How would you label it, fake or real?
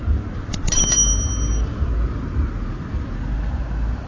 real